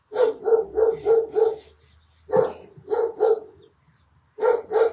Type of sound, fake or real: real